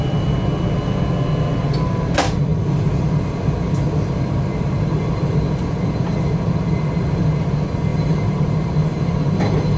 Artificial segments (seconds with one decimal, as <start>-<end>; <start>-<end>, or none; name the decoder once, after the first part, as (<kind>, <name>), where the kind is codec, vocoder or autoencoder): none